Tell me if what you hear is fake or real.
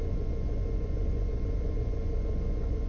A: fake